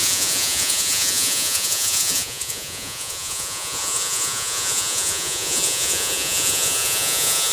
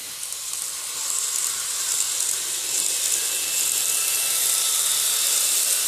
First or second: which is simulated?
first